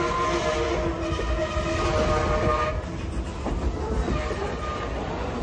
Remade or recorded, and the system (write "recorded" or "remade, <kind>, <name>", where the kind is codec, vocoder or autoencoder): recorded